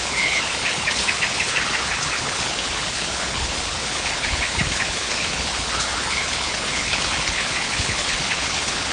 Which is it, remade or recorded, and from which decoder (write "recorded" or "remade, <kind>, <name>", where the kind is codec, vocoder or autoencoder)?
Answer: remade, codec, HILCodec